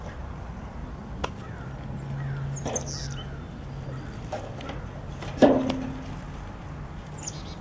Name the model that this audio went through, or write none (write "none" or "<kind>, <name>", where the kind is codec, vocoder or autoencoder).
none